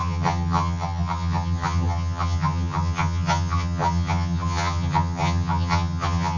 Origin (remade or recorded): remade